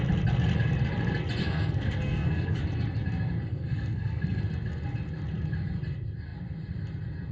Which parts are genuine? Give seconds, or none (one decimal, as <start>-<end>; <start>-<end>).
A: 0.0-1.4; 2.6-3.4; 4.4-7.3